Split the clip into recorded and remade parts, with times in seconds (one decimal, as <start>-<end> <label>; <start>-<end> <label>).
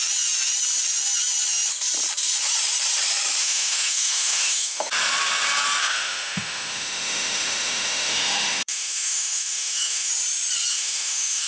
0.0-3.4 recorded; 3.4-4.9 remade; 4.9-5.8 recorded; 5.8-10.1 remade; 10.1-10.7 recorded; 10.7-11.5 remade